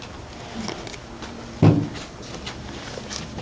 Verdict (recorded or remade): recorded